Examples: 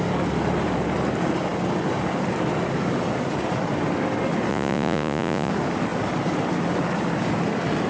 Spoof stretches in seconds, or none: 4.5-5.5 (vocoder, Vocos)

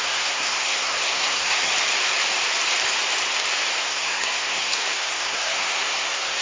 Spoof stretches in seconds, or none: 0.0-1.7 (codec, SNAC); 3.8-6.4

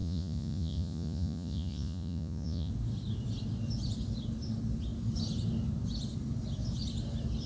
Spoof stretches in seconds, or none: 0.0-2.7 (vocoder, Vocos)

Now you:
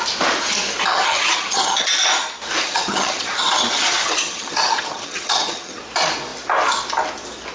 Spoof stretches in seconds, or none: 0.9-1.8 (vocoder, HiFi-GAN); 2.6-5.8

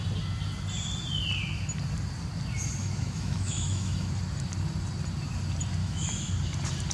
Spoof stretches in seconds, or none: 2.8-4.1 (autoencoder, DAC-VAE); 5.8-6.3

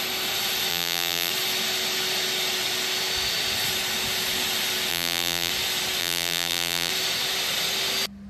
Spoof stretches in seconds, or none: 0.7-1.3 (vocoder, BigVGAN v2); 4.9-5.5; 6.0-6.9